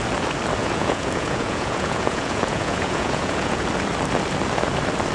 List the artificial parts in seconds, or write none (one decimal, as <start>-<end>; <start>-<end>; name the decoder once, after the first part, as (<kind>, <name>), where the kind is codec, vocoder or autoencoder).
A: 0.6-3.7 (vocoder, Vocos)